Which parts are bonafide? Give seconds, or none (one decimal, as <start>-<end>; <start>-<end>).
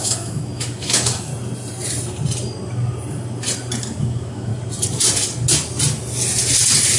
1.3-4.0; 4.5-7.0